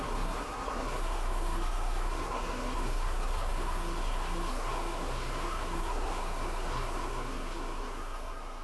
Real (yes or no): no